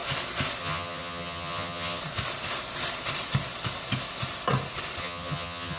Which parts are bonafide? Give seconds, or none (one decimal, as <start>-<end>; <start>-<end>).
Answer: 0.0-0.6; 2.0-5.0